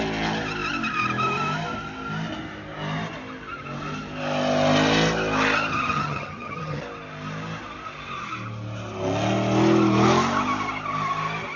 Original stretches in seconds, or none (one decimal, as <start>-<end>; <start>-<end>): 0.0-5.7; 6.8-11.6